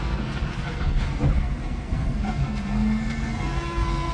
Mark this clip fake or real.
fake